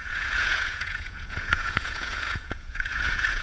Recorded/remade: remade